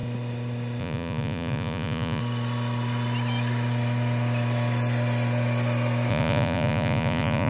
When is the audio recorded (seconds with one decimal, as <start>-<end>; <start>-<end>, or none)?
0.0-0.8; 2.2-6.1